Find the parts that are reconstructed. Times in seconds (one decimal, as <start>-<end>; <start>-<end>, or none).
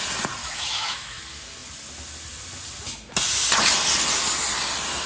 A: 0.4-1.2